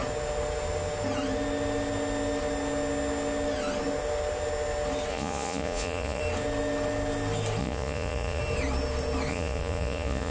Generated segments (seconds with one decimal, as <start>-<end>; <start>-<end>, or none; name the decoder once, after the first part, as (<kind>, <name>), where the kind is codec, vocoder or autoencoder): 5.1-6.2 (vocoder, Vocos); 7.6-8.4; 9.3-10.3